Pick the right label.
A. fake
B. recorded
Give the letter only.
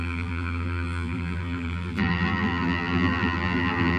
A